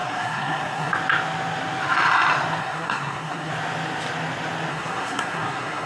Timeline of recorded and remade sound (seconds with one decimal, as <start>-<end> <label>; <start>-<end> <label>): 0.0-0.9 remade; 0.9-2.6 recorded; 2.6-3.5 remade; 3.5-4.7 recorded; 4.7-5.9 remade